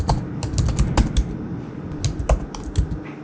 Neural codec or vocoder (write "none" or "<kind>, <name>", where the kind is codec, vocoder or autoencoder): none